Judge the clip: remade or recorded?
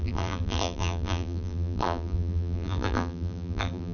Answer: remade